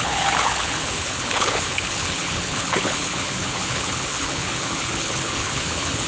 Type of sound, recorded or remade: remade